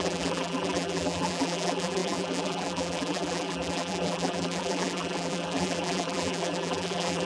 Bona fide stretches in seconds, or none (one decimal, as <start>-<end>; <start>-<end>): none